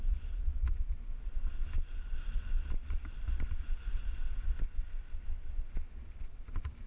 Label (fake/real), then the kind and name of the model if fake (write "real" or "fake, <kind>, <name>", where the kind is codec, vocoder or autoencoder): real